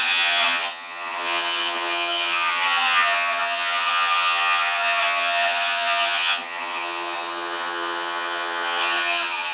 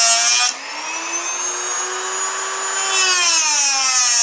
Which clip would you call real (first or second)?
second